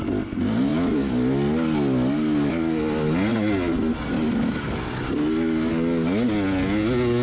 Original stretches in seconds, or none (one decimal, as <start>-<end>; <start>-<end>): 0.0-7.2